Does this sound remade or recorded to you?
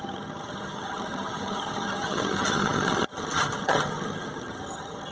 remade